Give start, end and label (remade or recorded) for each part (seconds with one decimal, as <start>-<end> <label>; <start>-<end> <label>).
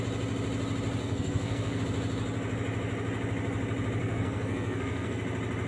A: 0.0-1.0 recorded; 1.0-1.8 remade; 1.8-4.0 recorded; 4.0-5.2 remade; 5.2-5.7 recorded